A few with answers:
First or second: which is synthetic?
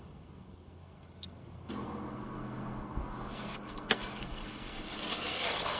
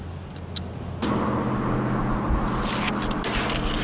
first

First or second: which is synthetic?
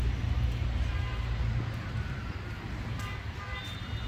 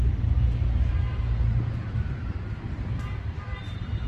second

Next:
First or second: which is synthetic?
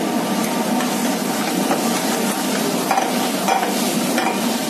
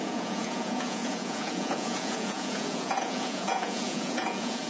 second